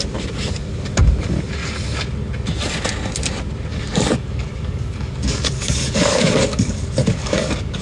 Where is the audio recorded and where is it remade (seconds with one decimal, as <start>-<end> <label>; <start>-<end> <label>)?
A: 0.0-3.7 recorded; 3.7-7.8 remade